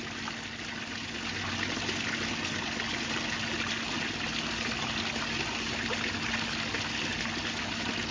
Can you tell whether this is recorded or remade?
recorded